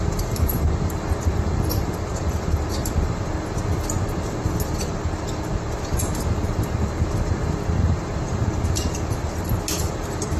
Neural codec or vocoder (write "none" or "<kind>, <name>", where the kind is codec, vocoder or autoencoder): none